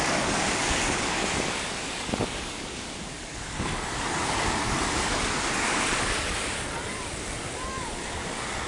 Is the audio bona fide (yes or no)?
no